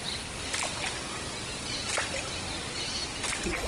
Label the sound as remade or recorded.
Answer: recorded